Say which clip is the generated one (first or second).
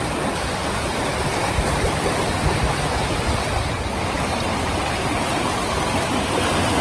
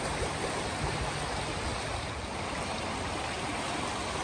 first